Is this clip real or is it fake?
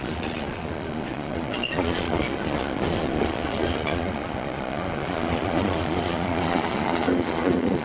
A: fake